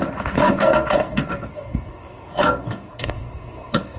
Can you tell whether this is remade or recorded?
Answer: remade